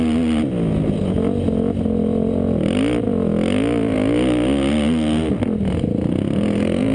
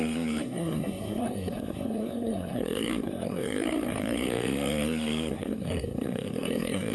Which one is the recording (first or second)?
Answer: first